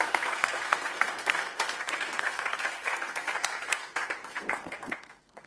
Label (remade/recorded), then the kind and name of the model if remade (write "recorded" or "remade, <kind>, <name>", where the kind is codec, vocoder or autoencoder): remade, codec, SNAC